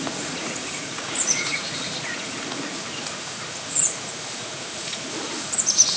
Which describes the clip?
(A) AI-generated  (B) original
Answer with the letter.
A